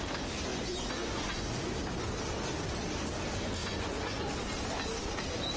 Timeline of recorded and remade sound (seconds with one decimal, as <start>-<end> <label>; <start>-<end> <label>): 0.0-0.5 recorded; 0.5-1.7 remade; 1.7-3.6 recorded; 3.6-4.2 remade; 4.2-5.6 recorded